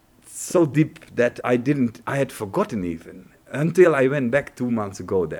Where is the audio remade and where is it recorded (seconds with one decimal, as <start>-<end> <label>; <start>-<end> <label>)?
0.0-0.5 recorded; 0.5-1.4 remade; 1.4-3.4 recorded; 3.4-4.7 remade; 4.7-5.4 recorded